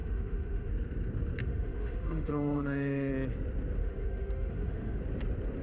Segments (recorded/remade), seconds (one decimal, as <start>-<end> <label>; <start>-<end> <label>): 0.0-0.7 remade; 0.7-1.4 recorded; 1.4-3.1 remade; 3.1-3.8 recorded; 3.8-5.0 remade; 5.0-5.6 recorded